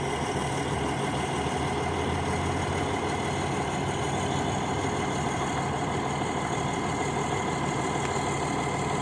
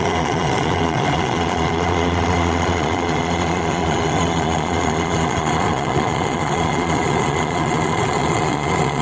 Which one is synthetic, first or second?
second